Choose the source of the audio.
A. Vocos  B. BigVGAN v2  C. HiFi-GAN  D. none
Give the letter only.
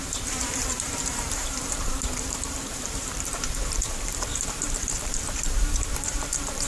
B